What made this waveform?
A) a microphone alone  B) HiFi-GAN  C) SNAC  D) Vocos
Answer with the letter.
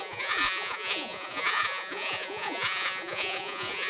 D